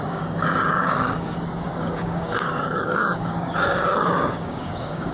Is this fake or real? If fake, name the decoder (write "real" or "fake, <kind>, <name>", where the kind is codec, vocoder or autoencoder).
fake, codec, DAC